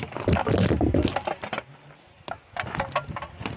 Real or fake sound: real